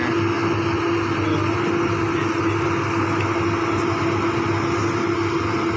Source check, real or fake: real